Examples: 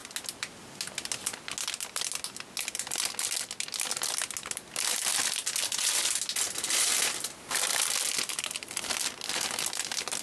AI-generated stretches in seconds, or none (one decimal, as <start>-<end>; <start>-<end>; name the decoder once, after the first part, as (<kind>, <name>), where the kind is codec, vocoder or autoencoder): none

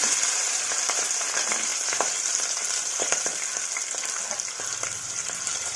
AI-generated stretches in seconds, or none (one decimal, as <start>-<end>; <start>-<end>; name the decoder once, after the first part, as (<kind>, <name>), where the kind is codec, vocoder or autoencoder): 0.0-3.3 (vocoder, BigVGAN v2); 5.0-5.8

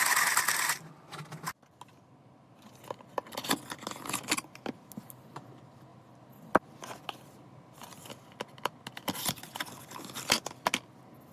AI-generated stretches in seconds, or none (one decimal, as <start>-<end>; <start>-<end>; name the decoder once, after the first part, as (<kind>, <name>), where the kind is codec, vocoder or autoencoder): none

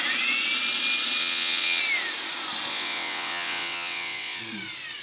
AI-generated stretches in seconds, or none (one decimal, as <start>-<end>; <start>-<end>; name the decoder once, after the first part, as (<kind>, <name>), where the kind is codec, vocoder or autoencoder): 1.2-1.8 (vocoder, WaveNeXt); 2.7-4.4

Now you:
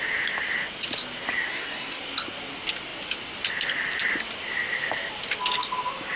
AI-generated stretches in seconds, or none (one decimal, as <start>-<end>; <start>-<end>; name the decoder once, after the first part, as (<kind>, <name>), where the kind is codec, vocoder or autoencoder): 1.5-2.0 (codec, SNAC)

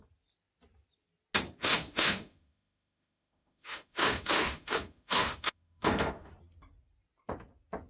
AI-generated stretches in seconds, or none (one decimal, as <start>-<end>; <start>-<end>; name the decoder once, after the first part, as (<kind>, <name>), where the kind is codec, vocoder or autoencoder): 1.6-6.3 (autoencoder, DAC-VAE)

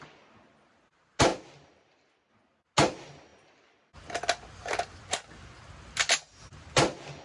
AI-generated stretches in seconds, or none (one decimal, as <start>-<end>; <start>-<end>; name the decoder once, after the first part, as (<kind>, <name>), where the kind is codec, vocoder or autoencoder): none